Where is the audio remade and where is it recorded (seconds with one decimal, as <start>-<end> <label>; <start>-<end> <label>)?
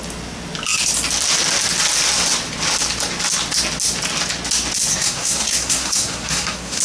0.0-4.9 recorded; 4.9-6.8 remade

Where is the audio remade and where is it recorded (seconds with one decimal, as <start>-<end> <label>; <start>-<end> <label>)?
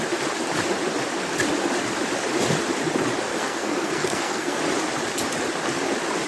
0.0-3.3 recorded; 3.3-4.6 remade; 4.6-6.3 recorded